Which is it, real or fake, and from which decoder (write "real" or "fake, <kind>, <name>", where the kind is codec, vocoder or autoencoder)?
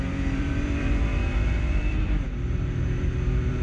fake, vocoder, BigVGAN v2